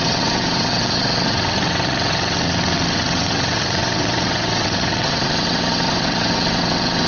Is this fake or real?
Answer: fake